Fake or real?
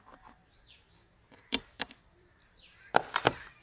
fake